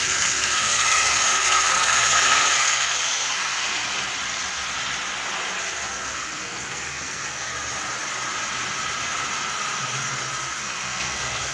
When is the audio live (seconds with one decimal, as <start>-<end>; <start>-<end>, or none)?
3.8-5.6; 7.5-10.6